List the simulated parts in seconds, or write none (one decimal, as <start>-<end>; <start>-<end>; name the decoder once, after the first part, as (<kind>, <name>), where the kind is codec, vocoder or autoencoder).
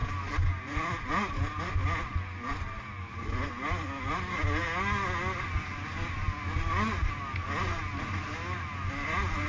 none